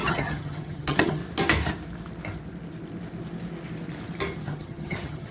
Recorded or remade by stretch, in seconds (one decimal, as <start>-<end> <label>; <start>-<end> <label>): 0.0-1.2 remade; 1.2-4.4 recorded; 4.4-5.3 remade